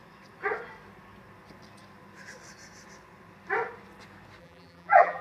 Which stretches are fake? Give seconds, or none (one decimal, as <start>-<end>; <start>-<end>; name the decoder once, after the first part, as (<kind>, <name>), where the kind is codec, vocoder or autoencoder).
4.4-5.2 (vocoder, BigVGAN v2)